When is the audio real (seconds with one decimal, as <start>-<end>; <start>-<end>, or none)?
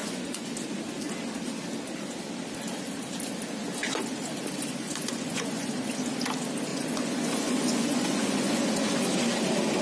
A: 0.5-4.8; 5.7-6.7; 8.6-9.8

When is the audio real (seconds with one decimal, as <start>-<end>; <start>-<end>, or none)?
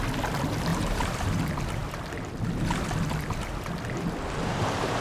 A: 0.0-0.7; 1.4-5.0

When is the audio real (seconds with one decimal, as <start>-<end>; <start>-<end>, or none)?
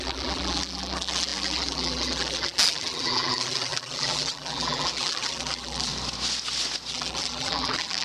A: 5.9-6.9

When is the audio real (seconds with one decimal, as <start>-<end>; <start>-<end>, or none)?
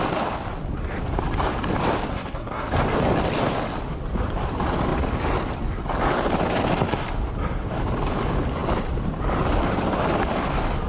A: 0.0-2.1; 2.7-10.9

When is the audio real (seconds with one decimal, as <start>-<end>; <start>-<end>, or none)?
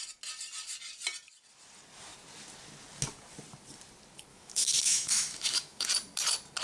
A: 0.0-4.3; 5.9-6.6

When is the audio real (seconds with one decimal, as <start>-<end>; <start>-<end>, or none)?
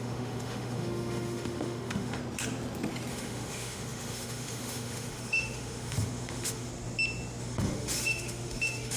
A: 2.2-3.1; 6.7-7.4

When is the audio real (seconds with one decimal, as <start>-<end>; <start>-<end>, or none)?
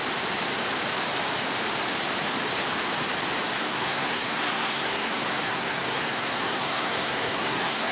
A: 0.0-3.6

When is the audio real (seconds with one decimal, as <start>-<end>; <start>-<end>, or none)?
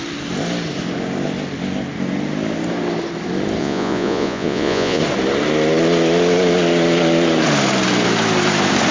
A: 0.0-3.6; 5.0-8.9